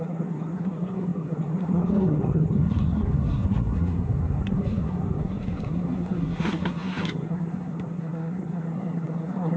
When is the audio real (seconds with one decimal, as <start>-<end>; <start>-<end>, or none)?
none